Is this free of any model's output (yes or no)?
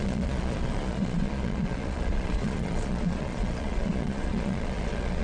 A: no